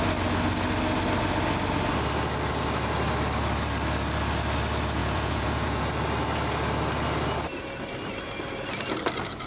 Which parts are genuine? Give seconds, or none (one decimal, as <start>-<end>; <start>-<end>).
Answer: 0.0-5.0; 5.8-9.5